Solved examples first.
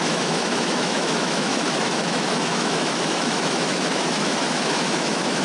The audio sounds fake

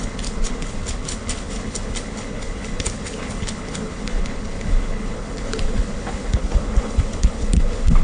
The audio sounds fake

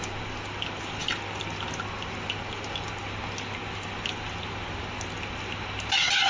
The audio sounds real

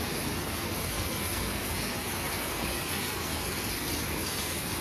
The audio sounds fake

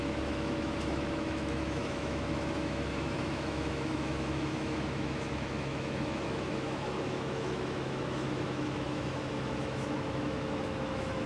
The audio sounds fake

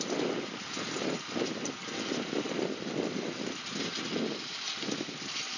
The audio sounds real